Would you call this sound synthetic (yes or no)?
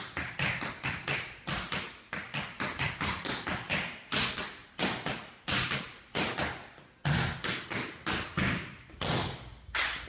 no